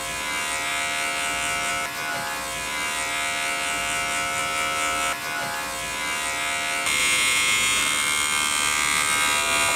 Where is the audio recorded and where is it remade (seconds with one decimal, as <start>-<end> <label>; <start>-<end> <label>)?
0.0-7.0 recorded; 7.0-7.8 remade; 7.8-9.8 recorded